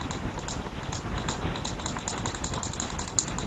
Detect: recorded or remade recorded